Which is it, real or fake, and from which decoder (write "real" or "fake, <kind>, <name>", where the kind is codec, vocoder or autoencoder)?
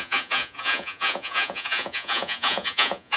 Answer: fake, vocoder, Vocos